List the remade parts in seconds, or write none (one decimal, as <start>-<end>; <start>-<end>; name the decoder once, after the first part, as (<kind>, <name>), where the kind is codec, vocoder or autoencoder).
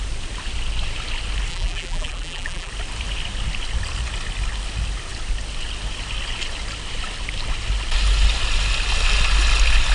1.5-2.7 (vocoder, BigVGAN v2)